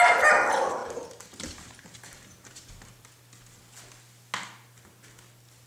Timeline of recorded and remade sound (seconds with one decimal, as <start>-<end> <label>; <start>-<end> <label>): 0.0-0.8 recorded; 0.8-2.7 remade; 2.7-5.7 recorded